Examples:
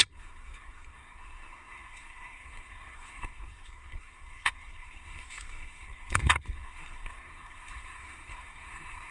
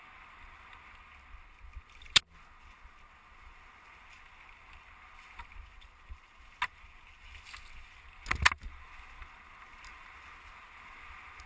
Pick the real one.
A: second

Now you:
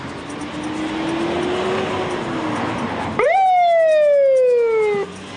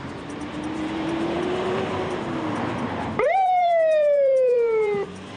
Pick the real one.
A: first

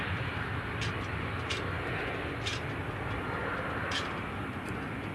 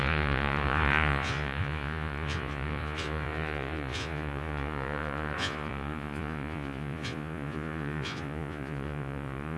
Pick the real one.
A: first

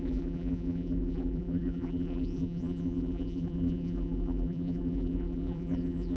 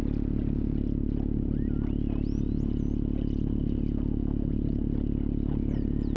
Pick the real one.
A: second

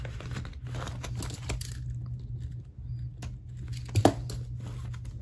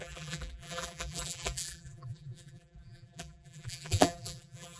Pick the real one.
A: first